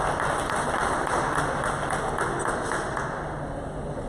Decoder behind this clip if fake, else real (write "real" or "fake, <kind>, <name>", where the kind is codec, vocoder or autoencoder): real